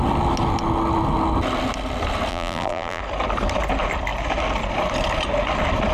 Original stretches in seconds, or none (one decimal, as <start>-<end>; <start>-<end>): 0.0-2.3; 3.0-5.9